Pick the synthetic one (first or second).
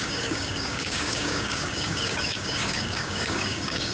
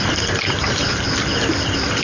first